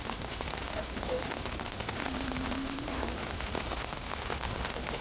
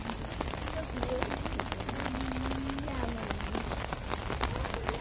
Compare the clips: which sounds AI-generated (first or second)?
first